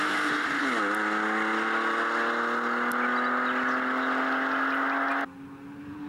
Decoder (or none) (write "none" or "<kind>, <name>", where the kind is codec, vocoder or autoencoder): none